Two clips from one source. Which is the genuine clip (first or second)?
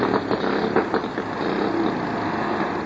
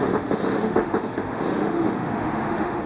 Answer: first